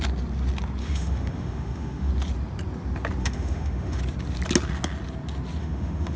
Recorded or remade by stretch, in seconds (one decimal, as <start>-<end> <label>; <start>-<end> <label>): 0.0-0.8 recorded; 0.8-2.1 remade; 2.1-3.2 recorded; 3.2-4.0 remade; 4.0-5.6 recorded; 5.6-6.2 remade